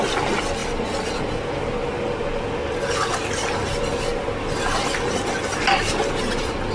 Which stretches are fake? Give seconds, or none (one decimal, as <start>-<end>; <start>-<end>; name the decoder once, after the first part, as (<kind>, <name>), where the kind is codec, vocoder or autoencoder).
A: none

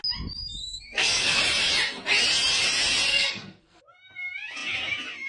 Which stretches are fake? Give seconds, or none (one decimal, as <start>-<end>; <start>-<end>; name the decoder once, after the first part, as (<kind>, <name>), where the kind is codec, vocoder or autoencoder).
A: 0.6-1.4 (codec, SNAC); 3.1-3.8

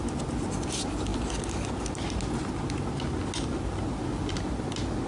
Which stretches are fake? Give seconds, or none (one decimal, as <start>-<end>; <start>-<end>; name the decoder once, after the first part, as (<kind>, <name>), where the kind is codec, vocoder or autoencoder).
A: none